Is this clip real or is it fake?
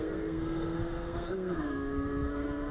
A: fake